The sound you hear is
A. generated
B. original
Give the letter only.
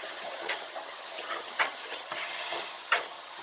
A